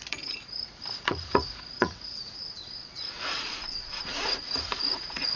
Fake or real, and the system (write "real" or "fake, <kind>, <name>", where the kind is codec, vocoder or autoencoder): fake, vocoder, Vocos